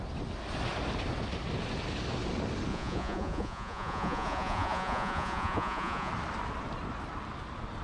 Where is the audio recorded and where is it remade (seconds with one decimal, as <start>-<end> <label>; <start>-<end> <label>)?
0.0-2.7 recorded; 2.7-6.1 remade; 6.1-7.8 recorded